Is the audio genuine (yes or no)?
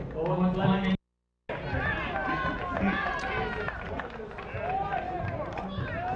yes